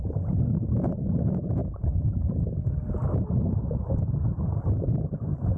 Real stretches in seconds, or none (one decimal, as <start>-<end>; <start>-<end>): 0.0-1.6; 2.3-4.3